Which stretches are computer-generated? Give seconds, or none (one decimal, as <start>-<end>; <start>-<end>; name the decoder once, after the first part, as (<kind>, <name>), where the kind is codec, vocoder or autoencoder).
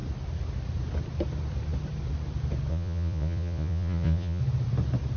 2.7-4.4 (vocoder, Vocos)